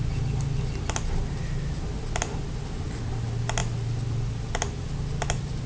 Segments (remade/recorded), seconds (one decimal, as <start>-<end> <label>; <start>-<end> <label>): 0.0-5.7 recorded